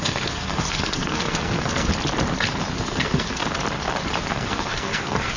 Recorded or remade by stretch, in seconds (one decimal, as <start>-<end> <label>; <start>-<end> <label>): 0.0-1.9 remade; 1.9-2.7 recorded; 2.7-3.4 remade; 3.4-4.3 recorded; 4.3-5.4 remade